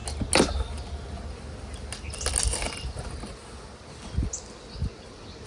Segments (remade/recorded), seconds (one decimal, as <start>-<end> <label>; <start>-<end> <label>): 0.0-5.5 recorded